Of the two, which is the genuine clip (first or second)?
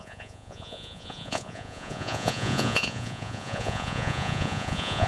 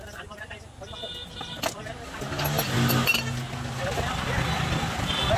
second